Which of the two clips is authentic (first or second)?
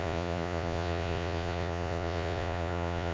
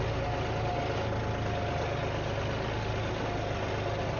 second